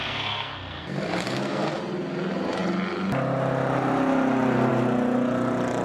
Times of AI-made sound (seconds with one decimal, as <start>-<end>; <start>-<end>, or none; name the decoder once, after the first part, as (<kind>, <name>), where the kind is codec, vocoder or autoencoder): 0.0-1.8 (codec, SNAC)